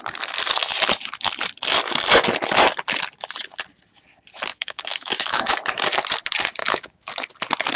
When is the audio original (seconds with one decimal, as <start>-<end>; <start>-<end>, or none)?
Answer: 0.0-4.5; 5.5-6.6; 7.1-7.8